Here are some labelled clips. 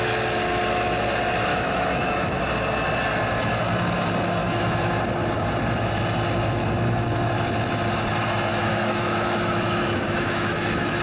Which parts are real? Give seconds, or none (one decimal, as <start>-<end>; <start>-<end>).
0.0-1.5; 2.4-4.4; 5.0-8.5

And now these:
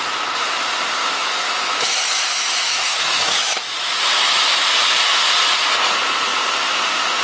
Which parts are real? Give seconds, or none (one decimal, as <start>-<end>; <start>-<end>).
0.0-1.0; 5.3-7.2

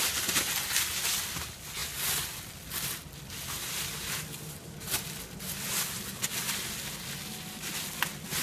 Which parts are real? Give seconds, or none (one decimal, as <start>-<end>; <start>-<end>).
0.0-8.4

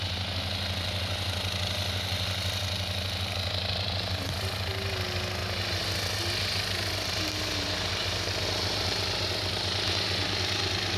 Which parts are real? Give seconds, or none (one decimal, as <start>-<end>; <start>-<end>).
0.0-11.0